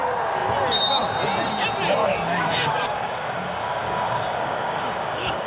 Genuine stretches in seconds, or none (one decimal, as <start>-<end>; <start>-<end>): 0.0-2.0